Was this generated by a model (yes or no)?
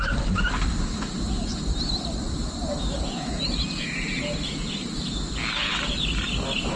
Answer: no